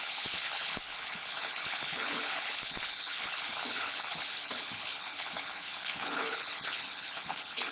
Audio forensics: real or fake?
fake